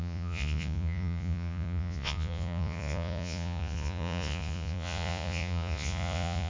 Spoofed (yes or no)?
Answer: yes